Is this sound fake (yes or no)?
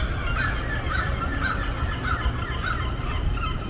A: no